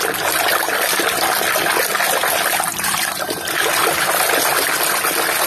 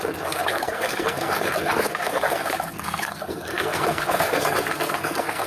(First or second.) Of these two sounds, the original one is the first